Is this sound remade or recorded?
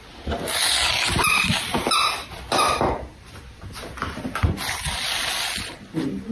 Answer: recorded